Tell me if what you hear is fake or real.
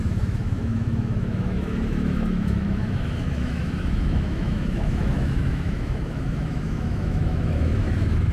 fake